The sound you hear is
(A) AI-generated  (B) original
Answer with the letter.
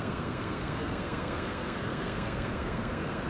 A